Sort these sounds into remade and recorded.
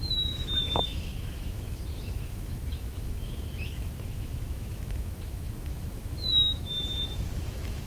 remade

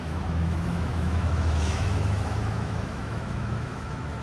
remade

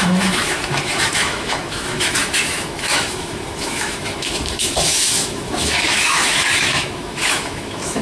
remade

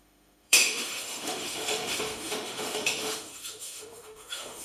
remade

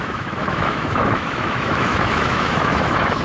remade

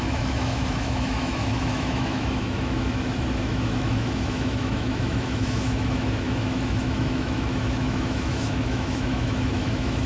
remade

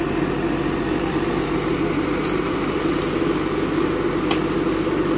recorded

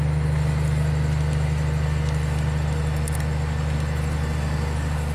recorded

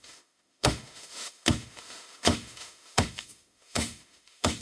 remade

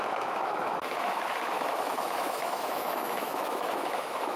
remade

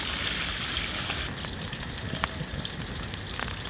recorded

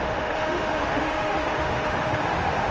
remade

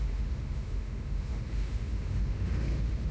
remade